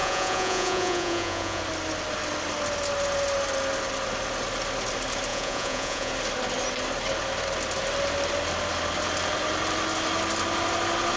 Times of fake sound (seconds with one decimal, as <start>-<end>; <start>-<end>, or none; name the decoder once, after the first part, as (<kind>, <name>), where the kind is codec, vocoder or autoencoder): 0.0-1.6 (vocoder, Vocos); 5.3-6.1

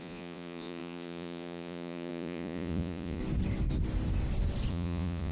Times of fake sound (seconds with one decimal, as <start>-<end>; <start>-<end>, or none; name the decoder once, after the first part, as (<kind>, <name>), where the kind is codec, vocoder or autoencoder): 0.0-3.2 (vocoder, Vocos); 4.7-5.3

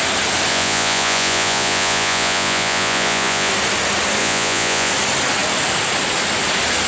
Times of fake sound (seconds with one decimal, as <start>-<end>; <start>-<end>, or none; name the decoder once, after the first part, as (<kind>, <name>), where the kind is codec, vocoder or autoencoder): 0.5-3.5 (vocoder, Vocos); 4.2-4.9

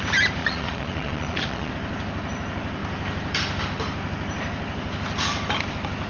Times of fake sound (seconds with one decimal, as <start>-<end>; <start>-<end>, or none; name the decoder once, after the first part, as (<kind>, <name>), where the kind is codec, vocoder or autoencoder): 0.4-1.7 (vocoder, Vocos)

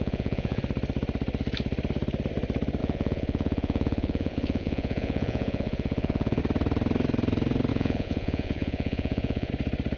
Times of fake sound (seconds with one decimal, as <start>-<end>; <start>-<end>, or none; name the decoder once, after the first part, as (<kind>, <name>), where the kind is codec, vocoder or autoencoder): 0.0-0.6 (vocoder, Vocos); 2.8-6.4; 7.7-9.5

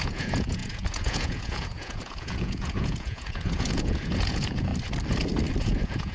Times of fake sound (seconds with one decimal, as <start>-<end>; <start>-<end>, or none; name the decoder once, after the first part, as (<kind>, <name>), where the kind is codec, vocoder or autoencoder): 0.0-4.7 (vocoder, Vocos); 5.6-6.1

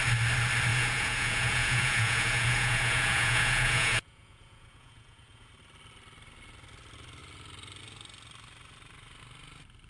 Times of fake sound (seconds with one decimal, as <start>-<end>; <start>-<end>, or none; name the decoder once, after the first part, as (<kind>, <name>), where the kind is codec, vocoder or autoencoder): 0.7-5.5 (vocoder, Vocos)

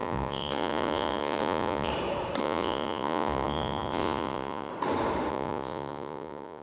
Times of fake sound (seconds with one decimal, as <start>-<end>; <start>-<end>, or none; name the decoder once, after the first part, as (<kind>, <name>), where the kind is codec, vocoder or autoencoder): 0.0-1.9 (vocoder, Vocos); 2.4-4.7; 5.3-6.6